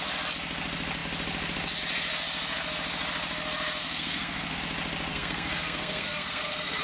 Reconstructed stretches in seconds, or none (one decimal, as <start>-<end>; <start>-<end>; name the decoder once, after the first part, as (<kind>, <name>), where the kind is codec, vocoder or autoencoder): 3.8-4.6 (codec, SNAC); 5.1-6.8